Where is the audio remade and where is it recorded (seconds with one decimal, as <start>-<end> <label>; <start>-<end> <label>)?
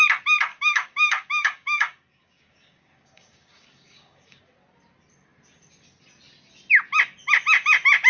0.0-0.5 recorded; 0.5-4.4 remade; 4.4-8.1 recorded